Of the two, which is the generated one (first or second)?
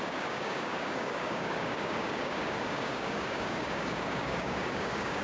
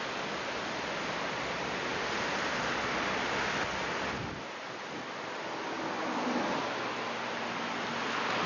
first